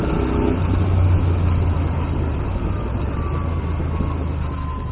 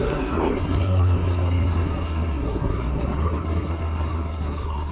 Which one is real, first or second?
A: first